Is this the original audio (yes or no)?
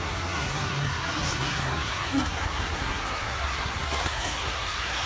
no